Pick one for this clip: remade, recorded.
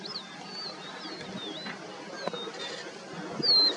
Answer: recorded